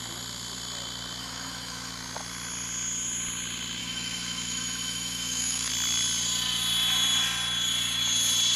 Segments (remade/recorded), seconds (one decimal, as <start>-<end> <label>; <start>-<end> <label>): 0.0-1.2 recorded; 1.2-1.9 remade; 1.9-3.8 recorded; 3.8-5.7 remade; 5.7-8.6 recorded